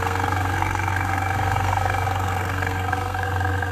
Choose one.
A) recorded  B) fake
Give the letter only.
B